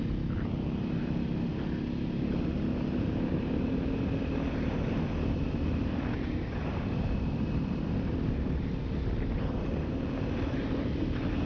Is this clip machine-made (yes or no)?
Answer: no